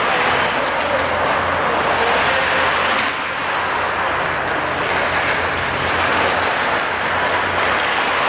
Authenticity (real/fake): real